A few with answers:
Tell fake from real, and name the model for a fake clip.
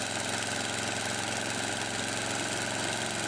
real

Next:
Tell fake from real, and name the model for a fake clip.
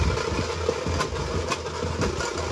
real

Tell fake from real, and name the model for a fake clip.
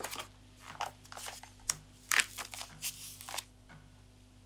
real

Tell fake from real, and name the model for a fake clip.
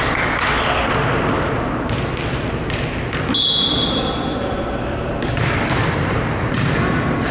real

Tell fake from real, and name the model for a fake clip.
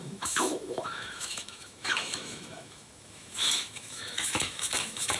fake, autoencoder, DAC-VAE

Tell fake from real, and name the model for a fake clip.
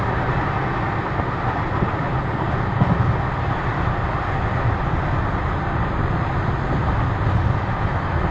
real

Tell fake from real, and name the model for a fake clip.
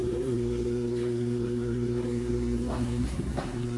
fake, codec, SNAC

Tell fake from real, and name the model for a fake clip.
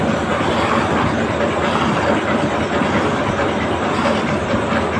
real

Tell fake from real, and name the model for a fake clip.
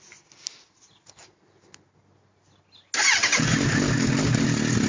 real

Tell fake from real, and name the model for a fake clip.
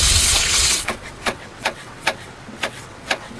fake, vocoder, WaveNeXt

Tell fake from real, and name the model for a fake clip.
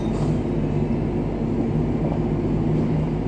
real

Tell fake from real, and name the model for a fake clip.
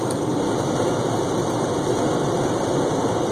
real